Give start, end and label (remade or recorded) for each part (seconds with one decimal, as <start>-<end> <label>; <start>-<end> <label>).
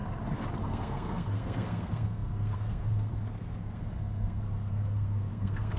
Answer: 0.0-0.6 recorded; 0.6-5.8 remade